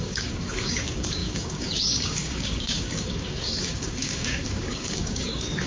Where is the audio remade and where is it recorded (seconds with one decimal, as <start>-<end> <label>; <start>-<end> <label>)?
0.0-5.7 remade